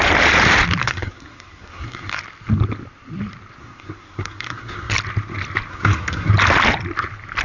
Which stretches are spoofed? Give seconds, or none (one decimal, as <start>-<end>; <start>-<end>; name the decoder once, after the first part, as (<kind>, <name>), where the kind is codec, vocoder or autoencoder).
0.8-2.2 (codec, SNAC); 3.6-4.9; 5.7-6.3